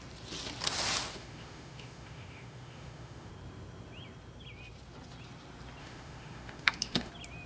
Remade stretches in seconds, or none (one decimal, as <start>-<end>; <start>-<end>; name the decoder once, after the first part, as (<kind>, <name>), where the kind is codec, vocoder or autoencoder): 1.1-3.3 (autoencoder, DAC-VAE); 5.8-7.1